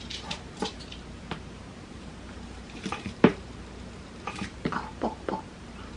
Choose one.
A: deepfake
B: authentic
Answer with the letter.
A